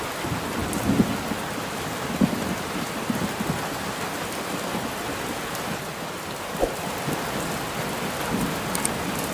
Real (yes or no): yes